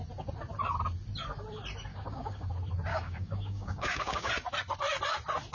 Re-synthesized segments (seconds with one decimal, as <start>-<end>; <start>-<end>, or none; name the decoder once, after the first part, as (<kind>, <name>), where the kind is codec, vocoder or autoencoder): 1.9-2.5 (codec, DAC); 2.9-4.3